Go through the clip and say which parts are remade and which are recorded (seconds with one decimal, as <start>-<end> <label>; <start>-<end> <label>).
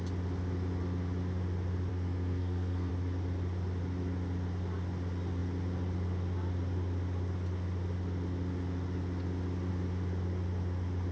0.0-1.9 recorded; 1.9-2.9 remade; 2.9-11.1 recorded